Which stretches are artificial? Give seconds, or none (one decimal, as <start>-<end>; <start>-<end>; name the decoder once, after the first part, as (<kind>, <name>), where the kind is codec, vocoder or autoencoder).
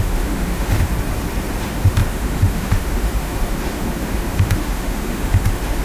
0.0-0.9 (autoencoder, DAC-VAE); 1.6-5.8